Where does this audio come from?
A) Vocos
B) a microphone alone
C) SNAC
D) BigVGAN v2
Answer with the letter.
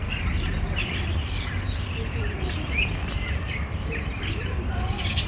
B